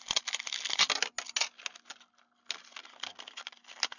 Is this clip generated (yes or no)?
no